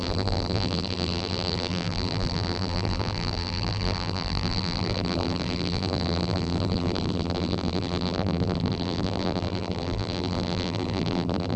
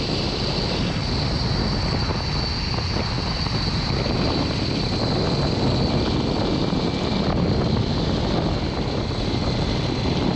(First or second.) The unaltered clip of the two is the second